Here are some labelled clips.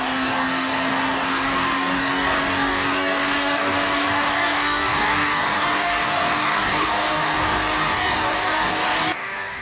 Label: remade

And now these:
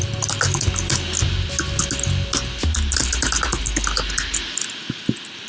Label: recorded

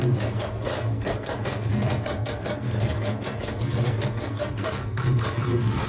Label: remade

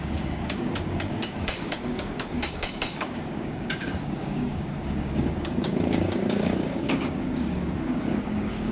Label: remade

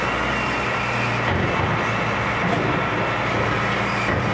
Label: recorded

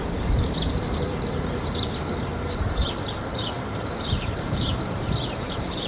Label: remade